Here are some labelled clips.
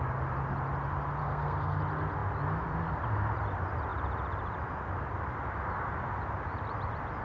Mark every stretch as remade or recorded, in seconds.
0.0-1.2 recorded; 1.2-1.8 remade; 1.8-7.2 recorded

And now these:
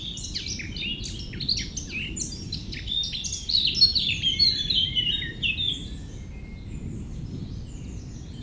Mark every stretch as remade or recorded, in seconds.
0.0-3.9 recorded; 3.9-5.7 remade; 5.7-8.4 recorded

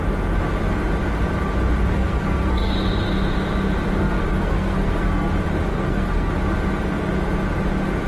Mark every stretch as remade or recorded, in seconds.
0.0-1.9 recorded; 1.9-2.7 remade; 2.7-4.0 recorded; 4.0-5.3 remade; 5.3-5.7 recorded; 5.7-6.3 remade; 6.3-8.1 recorded

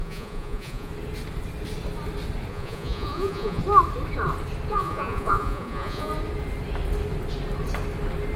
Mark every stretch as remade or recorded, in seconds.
0.0-0.9 remade; 0.9-2.5 recorded; 2.5-3.6 remade; 3.6-4.7 recorded; 4.7-6.1 remade; 6.1-8.4 recorded

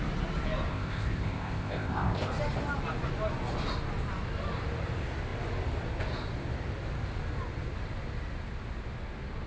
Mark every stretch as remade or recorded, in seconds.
0.0-0.7 recorded; 0.7-2.3 remade; 2.3-9.5 recorded